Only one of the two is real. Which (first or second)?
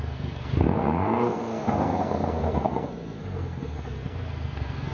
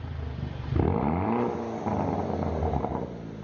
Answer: second